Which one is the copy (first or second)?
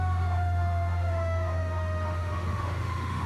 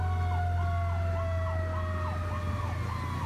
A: first